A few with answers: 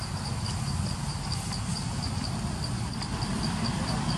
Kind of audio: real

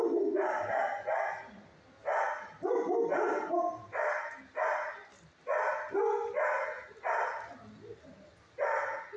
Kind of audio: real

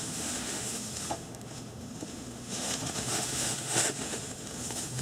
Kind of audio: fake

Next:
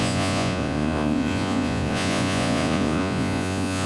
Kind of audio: fake